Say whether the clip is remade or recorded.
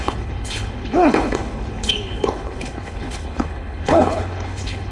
remade